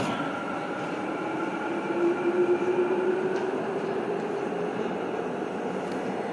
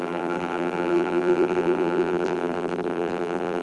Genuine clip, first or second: first